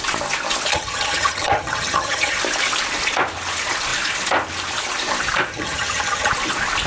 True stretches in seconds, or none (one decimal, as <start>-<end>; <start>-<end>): 0.0-0.7; 2.4-5.5; 6.3-6.9